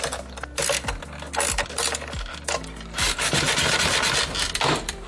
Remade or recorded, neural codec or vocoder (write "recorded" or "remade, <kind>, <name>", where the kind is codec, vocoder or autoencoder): recorded